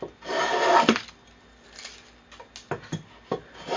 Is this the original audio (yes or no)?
yes